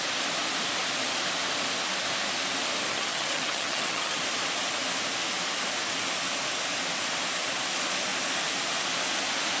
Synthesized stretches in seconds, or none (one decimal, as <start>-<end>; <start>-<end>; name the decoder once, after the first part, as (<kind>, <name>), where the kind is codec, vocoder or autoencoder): 2.9-4.2 (vocoder, HiFi-GAN)